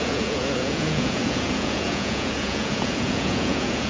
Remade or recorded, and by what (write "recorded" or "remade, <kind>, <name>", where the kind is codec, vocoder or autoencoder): remade, vocoder, Vocos